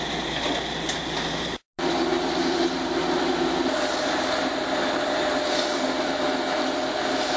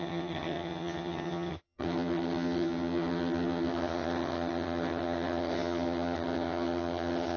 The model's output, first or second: second